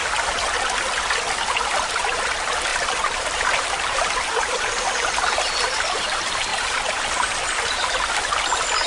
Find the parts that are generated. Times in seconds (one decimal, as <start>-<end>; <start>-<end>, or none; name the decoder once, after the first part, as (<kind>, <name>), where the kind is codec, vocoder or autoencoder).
2.7-4.9 (vocoder, BigVGAN v2); 6.5-7.1